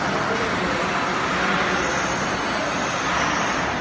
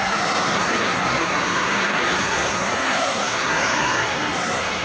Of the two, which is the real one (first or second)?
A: first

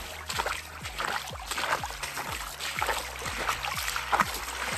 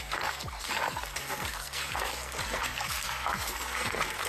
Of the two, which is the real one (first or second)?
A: first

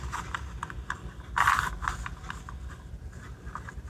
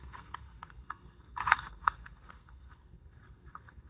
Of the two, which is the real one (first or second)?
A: first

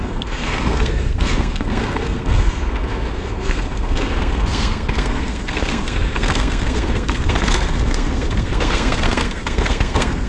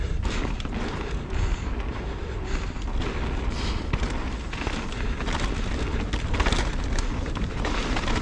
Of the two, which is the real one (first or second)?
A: second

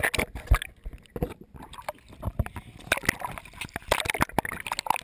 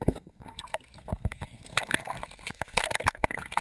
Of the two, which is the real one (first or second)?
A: first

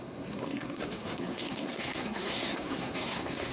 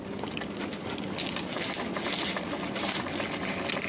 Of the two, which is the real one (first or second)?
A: second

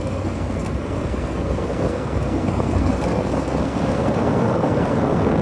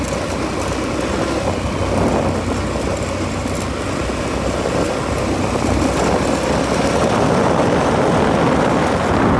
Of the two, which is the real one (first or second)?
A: second